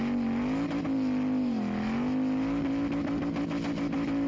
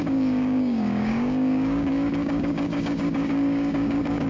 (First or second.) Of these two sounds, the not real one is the second